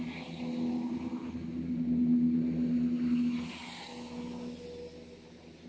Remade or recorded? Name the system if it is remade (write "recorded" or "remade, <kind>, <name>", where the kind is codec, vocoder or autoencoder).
recorded